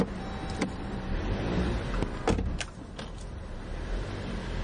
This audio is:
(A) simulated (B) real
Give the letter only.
B